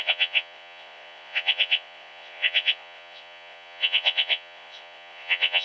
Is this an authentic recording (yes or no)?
no